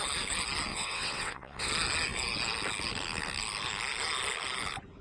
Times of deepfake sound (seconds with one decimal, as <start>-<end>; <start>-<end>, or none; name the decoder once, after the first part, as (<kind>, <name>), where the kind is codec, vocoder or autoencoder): 0.7-1.7 (vocoder, WaveNeXt)